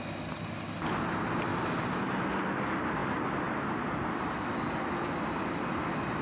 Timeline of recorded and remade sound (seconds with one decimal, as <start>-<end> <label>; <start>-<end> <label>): 0.0-1.5 recorded; 1.5-2.2 remade; 2.2-6.2 recorded